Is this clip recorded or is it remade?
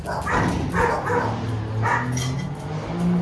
recorded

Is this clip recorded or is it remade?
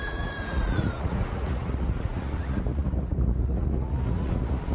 remade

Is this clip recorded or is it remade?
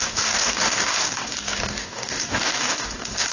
remade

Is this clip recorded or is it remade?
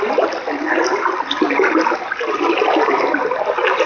recorded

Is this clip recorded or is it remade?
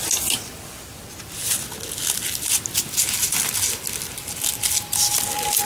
recorded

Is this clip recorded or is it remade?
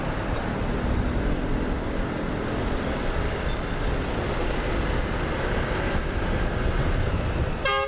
recorded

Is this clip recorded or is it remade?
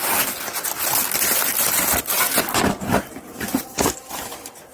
recorded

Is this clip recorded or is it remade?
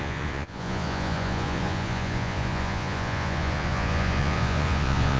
remade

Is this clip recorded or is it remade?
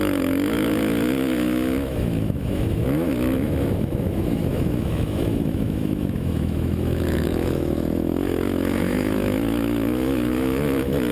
remade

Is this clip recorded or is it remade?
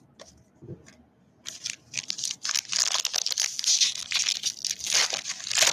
recorded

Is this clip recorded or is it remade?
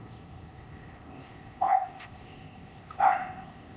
remade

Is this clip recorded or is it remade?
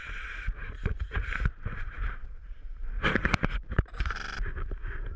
remade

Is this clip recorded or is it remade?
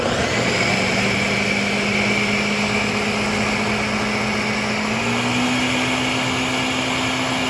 recorded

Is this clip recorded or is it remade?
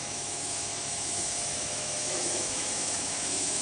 remade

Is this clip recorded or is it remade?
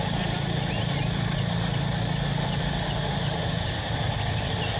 recorded